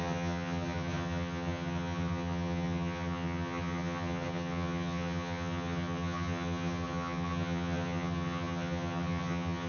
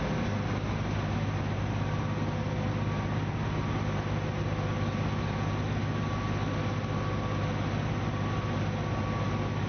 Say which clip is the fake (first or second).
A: first